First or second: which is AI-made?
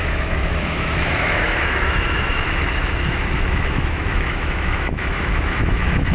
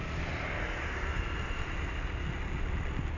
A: first